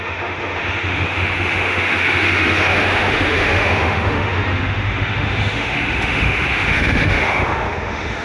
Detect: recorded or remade remade